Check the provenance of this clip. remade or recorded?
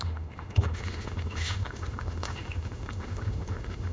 remade